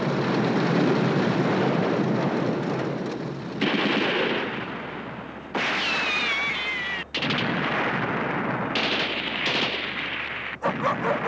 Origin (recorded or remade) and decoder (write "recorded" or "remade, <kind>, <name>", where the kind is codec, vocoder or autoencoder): recorded